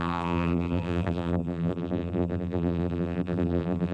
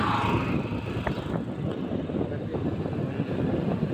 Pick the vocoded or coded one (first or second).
first